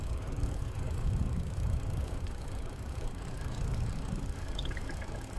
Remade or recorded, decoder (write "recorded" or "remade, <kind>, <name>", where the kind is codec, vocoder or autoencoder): remade, codec, DAC